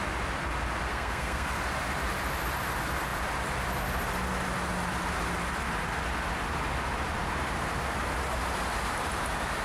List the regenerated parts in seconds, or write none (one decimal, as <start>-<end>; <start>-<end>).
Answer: 0.9-1.6